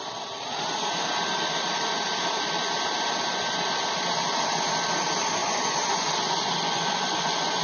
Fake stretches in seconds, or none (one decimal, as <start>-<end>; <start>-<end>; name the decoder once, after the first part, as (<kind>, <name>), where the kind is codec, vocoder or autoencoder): 5.4-7.6 (vocoder, Vocos)